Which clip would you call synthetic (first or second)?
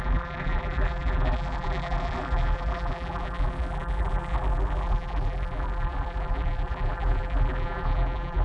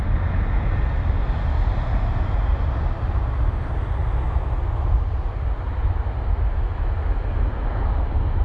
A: first